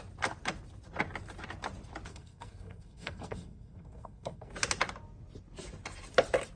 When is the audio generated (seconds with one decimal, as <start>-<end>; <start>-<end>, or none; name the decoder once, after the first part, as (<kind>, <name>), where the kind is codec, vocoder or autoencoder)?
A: 2.1-4.5 (codec, SNAC)